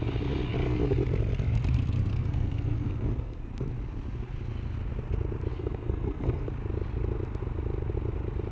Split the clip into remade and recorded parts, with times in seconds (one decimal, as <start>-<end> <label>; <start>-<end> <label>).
0.0-2.1 recorded; 2.1-3.5 remade; 3.5-5.5 recorded; 5.5-6.5 remade; 6.5-8.5 recorded